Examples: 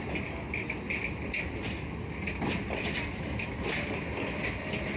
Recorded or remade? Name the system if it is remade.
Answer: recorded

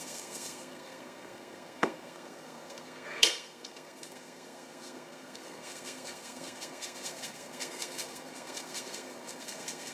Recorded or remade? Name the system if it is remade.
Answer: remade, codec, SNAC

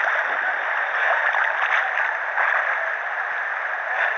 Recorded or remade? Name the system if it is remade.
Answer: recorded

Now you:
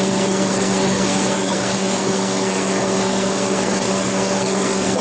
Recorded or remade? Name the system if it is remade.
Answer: remade, codec, SNAC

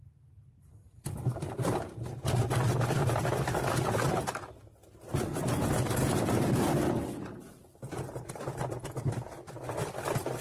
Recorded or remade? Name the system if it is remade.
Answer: recorded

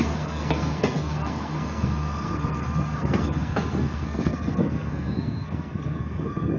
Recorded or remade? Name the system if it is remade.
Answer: remade, codec, SNAC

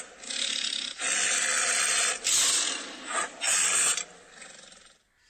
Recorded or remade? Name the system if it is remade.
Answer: recorded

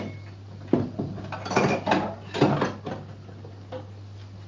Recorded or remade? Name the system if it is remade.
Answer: recorded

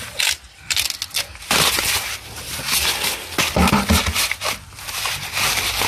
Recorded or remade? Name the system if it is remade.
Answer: recorded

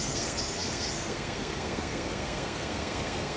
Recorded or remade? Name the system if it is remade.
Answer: remade, codec, SNAC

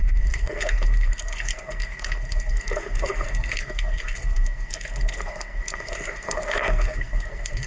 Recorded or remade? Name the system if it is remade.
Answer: remade, codec, SNAC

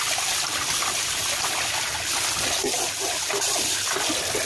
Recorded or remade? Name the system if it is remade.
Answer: recorded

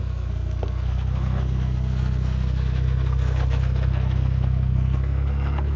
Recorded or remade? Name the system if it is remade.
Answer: remade, codec, SNAC